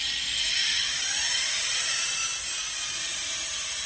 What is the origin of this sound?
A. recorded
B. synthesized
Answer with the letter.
A